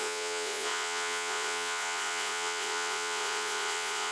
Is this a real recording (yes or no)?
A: no